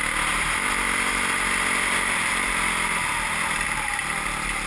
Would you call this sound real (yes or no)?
yes